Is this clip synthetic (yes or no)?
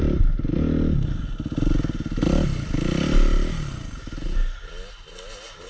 no